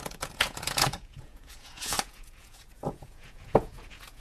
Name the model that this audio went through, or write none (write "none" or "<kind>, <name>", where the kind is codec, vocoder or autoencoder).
vocoder, Vocos